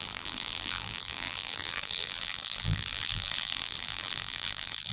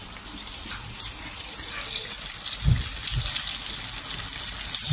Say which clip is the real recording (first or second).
second